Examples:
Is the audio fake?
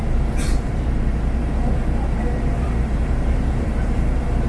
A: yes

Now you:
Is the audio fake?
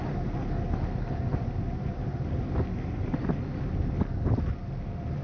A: no